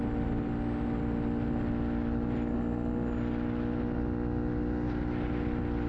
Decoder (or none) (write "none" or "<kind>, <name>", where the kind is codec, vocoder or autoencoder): none